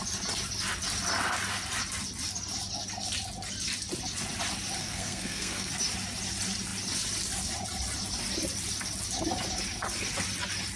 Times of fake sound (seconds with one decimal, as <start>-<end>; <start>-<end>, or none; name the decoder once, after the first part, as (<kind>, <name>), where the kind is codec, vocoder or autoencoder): 4.8-5.7 (codec, SNAC)

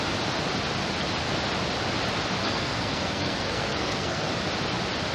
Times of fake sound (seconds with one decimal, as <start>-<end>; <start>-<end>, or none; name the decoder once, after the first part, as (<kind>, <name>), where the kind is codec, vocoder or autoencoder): 2.4-4.3 (codec, SNAC)

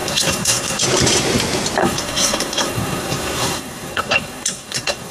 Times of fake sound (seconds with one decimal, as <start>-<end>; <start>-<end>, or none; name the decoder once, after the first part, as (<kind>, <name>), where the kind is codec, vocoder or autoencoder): 0.0-0.8 (codec, SNAC); 1.8-5.1

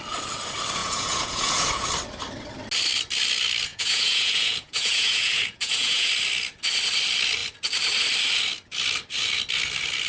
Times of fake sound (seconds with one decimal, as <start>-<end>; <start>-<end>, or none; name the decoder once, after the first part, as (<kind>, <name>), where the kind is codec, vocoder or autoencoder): 0.8-1.9 (vocoder, Vocos); 3.7-6.1

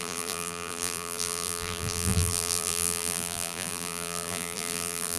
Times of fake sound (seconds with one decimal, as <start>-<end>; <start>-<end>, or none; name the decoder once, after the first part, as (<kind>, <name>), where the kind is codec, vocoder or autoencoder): 0.0-5.2 (vocoder, BigVGAN v2)